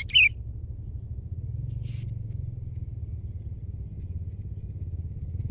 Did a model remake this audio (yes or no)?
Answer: no